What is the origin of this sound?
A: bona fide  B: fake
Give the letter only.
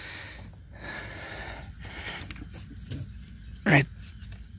A